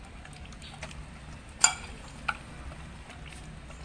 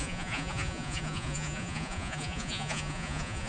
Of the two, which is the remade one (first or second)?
second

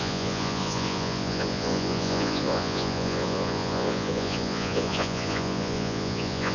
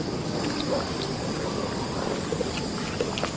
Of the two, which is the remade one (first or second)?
first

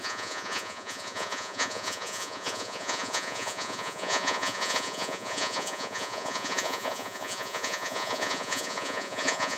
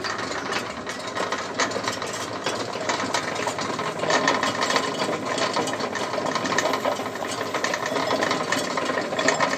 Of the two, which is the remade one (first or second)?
first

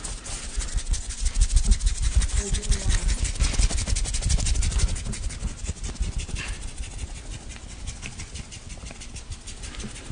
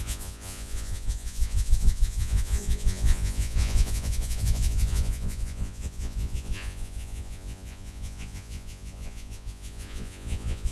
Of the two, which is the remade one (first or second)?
second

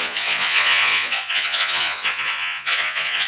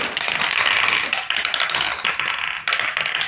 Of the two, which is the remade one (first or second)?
first